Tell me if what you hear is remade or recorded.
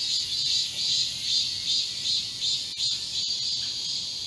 remade